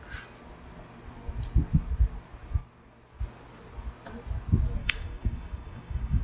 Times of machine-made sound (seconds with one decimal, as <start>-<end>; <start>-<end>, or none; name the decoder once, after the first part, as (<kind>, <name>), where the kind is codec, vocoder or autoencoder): 4.8-6.2 (codec, DAC)